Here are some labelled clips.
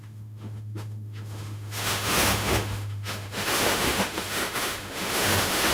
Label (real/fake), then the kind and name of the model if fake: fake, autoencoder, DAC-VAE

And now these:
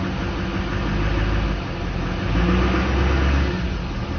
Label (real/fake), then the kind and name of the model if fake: real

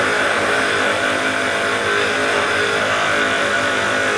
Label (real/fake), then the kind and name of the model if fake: real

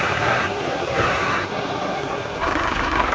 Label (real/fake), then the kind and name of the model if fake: fake, codec, SNAC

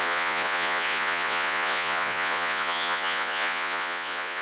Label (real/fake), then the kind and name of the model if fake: fake, vocoder, Vocos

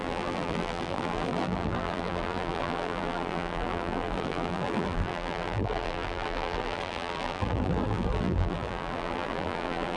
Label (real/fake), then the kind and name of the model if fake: fake, vocoder, BigVGAN v2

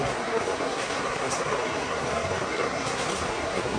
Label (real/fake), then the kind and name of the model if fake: fake, codec, SNAC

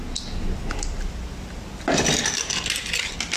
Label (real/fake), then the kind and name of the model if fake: real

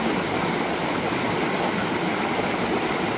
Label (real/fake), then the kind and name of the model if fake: real